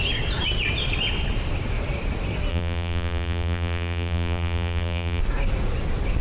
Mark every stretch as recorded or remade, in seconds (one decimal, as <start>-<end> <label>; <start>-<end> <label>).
0.0-2.5 recorded; 2.5-5.2 remade; 5.2-6.2 recorded